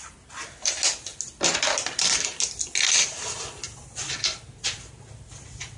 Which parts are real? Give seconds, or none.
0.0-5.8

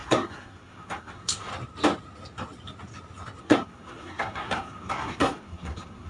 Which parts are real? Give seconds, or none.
1.5-3.4

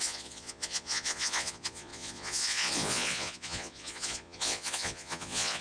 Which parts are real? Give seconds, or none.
none

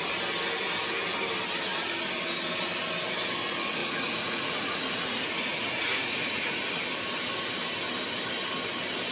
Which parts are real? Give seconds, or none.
0.0-3.8; 6.5-9.1